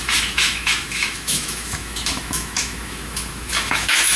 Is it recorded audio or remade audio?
remade